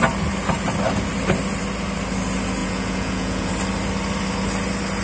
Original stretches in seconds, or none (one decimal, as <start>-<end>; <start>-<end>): 0.0-2.6; 3.5-5.0